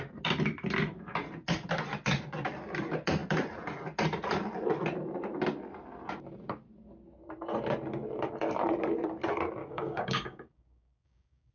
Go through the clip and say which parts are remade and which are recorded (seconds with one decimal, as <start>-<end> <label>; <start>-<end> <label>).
0.0-9.6 recorded; 9.6-11.5 remade